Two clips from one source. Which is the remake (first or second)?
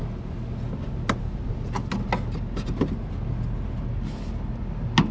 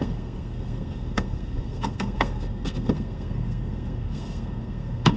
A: second